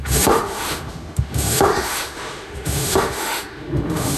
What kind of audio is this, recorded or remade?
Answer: remade